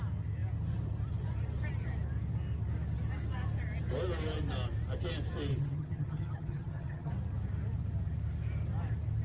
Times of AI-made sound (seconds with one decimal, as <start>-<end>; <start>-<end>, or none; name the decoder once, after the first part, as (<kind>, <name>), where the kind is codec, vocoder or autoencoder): 5.5-7.1 (vocoder, HiFi-GAN)